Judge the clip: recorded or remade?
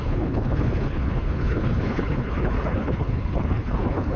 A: remade